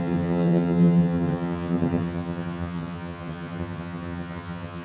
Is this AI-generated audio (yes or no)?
yes